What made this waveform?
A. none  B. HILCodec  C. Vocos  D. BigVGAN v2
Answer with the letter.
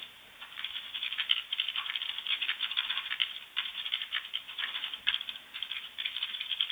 D